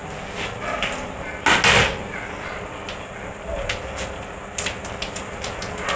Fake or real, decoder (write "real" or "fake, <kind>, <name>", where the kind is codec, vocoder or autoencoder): real